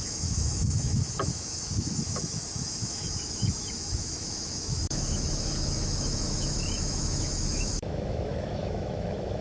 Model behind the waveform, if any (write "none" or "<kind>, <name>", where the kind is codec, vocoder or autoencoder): autoencoder, DAC-VAE